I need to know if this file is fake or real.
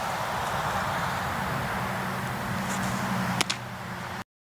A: real